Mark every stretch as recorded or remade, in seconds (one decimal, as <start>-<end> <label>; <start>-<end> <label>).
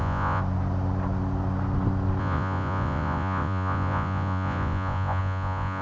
0.0-0.4 remade; 0.4-2.2 recorded; 2.2-5.8 remade